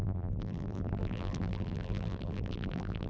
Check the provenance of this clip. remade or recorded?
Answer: remade